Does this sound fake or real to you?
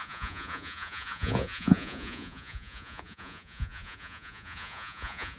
fake